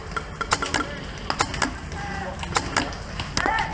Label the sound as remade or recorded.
recorded